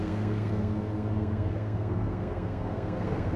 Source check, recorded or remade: remade